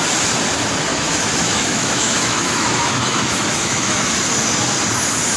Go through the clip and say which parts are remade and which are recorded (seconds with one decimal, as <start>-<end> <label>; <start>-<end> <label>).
0.0-0.9 recorded; 0.9-4.1 remade; 4.1-5.4 recorded